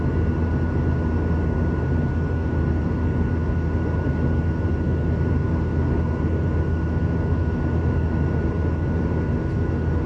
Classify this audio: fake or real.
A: real